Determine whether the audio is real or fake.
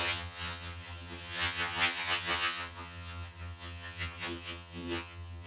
fake